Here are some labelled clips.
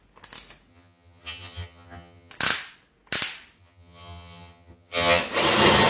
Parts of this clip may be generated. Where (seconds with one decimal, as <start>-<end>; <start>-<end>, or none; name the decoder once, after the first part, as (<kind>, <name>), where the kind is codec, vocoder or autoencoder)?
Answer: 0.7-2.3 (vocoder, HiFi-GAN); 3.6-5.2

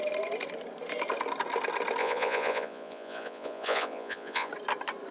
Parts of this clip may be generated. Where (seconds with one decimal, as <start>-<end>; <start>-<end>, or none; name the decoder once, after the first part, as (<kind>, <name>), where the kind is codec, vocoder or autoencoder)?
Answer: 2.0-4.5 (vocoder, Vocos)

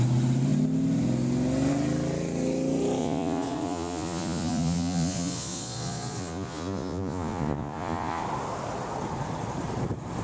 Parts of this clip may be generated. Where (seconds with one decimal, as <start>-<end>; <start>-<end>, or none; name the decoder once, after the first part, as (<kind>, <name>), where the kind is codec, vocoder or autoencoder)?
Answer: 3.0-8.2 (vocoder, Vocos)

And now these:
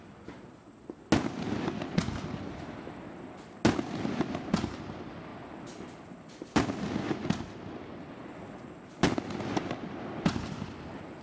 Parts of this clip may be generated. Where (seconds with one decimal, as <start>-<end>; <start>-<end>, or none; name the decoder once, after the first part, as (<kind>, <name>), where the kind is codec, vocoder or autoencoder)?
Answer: none

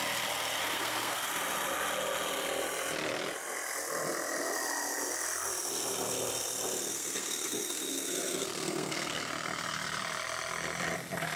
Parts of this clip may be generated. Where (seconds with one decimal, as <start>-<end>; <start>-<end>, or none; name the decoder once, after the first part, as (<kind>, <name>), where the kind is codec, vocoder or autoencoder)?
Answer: 0.6-1.3 (codec, SNAC); 6.9-9.3

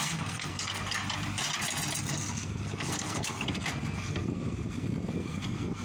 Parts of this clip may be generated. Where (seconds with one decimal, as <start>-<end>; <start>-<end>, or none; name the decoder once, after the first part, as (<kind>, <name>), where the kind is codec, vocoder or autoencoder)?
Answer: 0.0-1.0 (codec, SNAC); 2.0-5.8